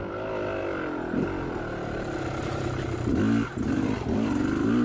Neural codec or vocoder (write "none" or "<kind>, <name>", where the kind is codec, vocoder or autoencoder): none